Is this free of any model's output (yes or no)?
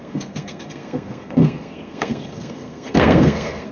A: no